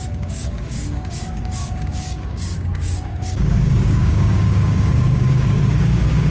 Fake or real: fake